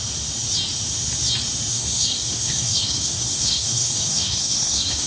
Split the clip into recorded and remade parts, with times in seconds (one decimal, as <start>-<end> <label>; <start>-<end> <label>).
0.0-1.7 recorded; 1.7-5.1 remade